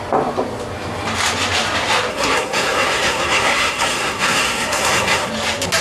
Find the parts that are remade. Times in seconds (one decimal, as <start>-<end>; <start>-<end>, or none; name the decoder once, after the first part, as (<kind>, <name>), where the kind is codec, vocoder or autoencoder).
2.1-5.3 (codec, SNAC)